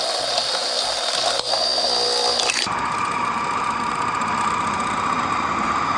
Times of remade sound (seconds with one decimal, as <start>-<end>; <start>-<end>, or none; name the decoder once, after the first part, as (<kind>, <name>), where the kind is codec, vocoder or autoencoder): none